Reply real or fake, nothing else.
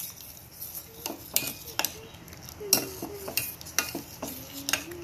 real